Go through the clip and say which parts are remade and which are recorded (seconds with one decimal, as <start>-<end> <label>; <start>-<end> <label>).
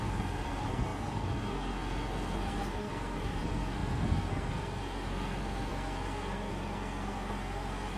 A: 0.0-8.0 remade